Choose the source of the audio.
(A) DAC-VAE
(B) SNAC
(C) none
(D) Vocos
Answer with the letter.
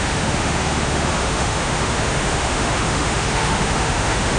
A